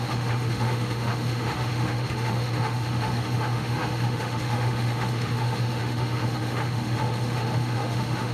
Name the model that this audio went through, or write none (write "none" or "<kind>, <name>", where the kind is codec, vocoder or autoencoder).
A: autoencoder, DAC-VAE